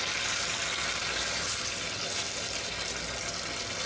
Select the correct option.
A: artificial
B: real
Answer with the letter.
B